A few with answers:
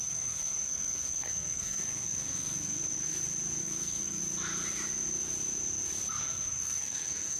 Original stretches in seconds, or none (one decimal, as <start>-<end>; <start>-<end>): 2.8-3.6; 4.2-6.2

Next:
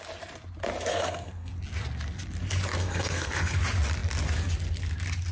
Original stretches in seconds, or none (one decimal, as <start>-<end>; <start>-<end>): 0.0-0.9; 1.5-2.7; 3.6-5.3

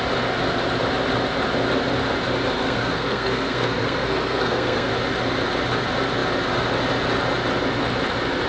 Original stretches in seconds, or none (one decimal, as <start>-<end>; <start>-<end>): 0.0-2.6; 4.9-8.5

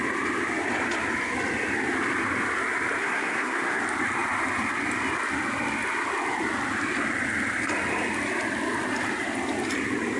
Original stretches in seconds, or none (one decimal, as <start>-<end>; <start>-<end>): 0.0-3.0; 3.8-10.2